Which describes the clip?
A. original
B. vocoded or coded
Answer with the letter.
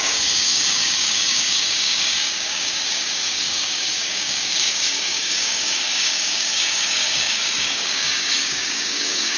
B